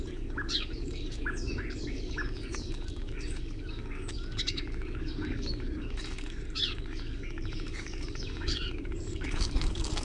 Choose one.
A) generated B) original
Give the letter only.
A